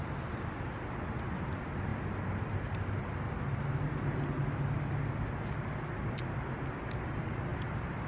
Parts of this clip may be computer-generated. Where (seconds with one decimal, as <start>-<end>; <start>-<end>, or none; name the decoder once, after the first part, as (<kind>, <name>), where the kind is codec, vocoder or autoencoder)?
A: none